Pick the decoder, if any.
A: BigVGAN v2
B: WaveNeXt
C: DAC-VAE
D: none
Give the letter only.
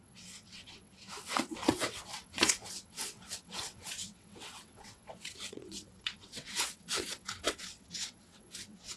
B